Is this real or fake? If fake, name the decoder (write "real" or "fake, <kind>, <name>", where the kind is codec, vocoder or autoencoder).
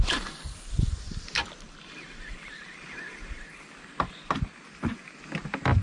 real